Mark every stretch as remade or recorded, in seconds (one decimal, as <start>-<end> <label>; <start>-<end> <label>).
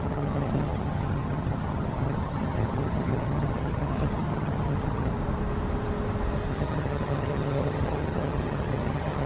0.0-5.1 remade; 5.1-6.5 recorded; 6.5-9.3 remade